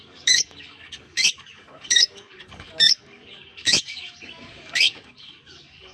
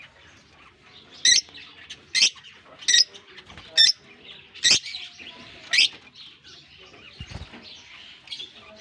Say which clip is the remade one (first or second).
first